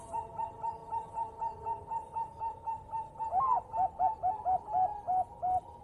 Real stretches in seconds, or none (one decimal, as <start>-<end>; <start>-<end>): 0.0-5.8